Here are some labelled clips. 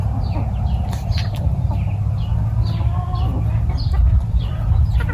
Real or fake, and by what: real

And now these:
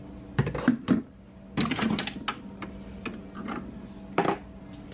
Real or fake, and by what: real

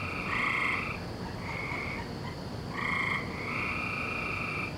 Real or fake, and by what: real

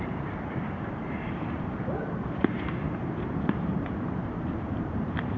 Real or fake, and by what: fake, vocoder, BigVGAN v2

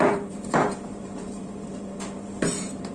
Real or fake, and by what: fake, vocoder, BigVGAN v2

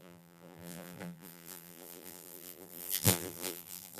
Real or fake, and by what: fake, vocoder, BigVGAN v2